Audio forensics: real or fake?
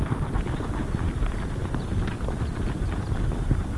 fake